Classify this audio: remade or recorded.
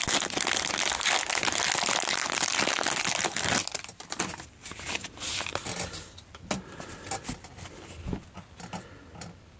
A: recorded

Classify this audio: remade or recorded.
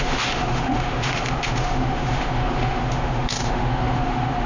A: remade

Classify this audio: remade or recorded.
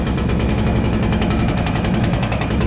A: remade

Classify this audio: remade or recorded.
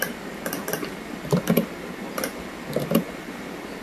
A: recorded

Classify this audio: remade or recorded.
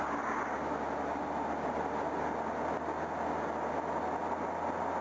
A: recorded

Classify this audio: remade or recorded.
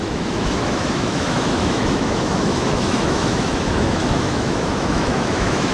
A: remade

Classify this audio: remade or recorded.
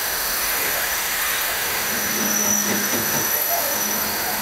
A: remade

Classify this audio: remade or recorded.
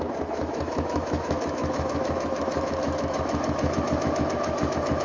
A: remade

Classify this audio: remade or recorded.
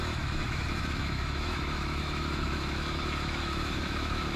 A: remade